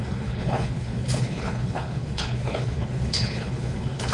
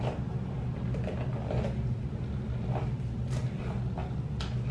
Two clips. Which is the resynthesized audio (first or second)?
first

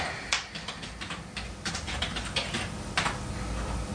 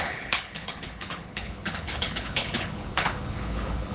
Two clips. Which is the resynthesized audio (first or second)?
second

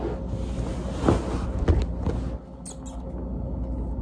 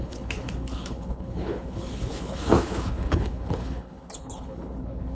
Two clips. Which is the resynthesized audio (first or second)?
second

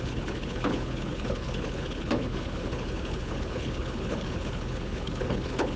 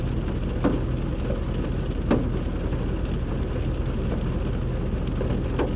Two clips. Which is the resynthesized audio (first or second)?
first